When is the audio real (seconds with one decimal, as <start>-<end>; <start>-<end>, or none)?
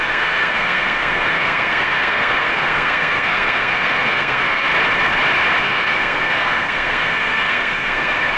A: 4.7-5.6